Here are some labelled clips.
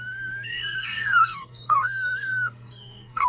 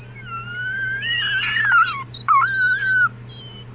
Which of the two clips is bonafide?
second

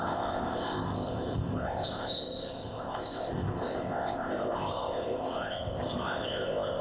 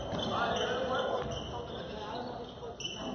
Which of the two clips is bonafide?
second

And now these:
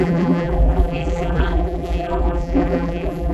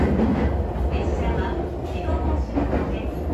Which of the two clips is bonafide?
second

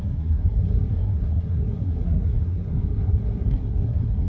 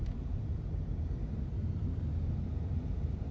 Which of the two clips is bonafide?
second